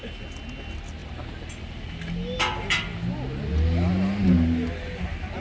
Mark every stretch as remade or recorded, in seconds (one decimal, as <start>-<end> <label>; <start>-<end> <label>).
0.0-5.4 recorded